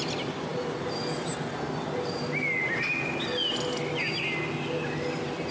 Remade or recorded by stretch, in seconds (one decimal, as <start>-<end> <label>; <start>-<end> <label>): 0.0-5.5 recorded